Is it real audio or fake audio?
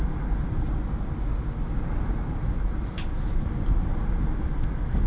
real